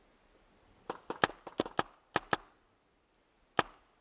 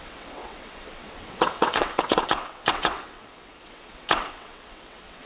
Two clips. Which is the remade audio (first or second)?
second